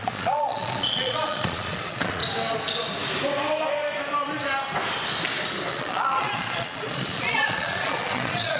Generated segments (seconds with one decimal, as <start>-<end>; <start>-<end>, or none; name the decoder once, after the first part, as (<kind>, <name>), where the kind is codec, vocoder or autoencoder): 0.0-2.2 (vocoder, Vocos); 5.7-8.6